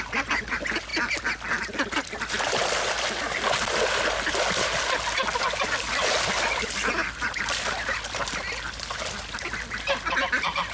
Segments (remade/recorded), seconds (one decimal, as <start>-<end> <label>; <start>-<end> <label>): 0.0-10.7 recorded